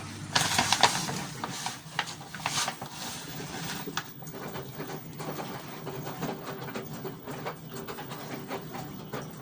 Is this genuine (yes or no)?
yes